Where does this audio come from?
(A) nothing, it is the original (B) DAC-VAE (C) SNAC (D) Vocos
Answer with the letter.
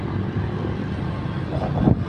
A